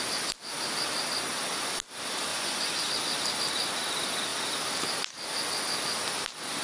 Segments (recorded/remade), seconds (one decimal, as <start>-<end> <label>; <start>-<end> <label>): 0.0-2.3 recorded; 2.3-2.9 remade; 2.9-6.6 recorded